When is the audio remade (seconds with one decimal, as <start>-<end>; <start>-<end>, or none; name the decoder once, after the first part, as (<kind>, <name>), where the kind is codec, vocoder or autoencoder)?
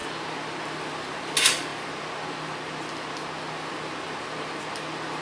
none